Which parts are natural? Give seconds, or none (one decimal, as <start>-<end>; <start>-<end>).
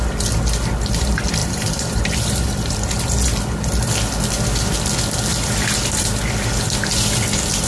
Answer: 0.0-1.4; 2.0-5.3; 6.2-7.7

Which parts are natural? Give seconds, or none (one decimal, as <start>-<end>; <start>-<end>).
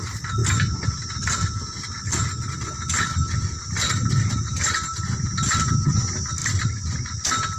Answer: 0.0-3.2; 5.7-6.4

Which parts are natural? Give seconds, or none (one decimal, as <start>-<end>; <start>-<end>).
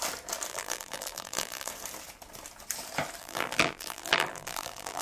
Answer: 0.0-0.5; 1.7-3.2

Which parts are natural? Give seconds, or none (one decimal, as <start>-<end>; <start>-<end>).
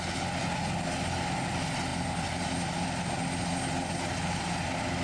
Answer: 0.0-5.0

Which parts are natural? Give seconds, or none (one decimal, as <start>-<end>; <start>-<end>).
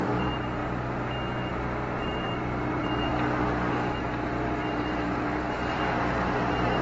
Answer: 0.6-2.0; 3.1-4.0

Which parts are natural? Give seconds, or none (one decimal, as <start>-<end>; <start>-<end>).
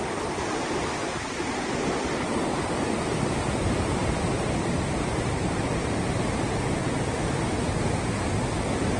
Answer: 0.0-4.0; 5.7-6.8; 7.4-9.0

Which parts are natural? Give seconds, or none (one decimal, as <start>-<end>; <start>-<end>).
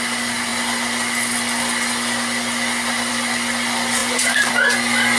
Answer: 0.0-4.0; 4.5-5.2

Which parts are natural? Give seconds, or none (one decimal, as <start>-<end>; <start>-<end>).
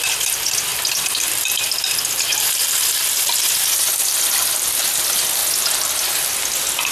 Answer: 5.4-6.1